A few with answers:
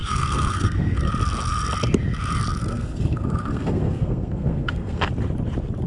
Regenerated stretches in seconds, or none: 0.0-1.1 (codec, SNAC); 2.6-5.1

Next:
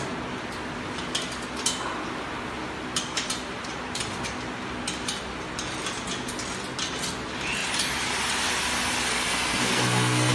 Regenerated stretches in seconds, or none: 9.1-10.3 (codec, SNAC)

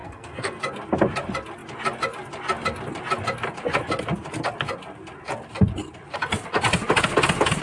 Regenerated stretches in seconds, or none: 0.0-0.6 (codec, SNAC)

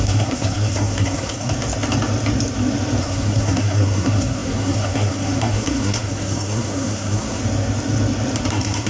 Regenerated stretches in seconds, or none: 0.0-1.5 (codec, SNAC); 3.0-7.4; 8.5-8.9

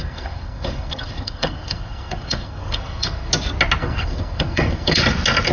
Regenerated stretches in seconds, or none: 0.0-3.3 (codec, SNAC); 3.8-5.0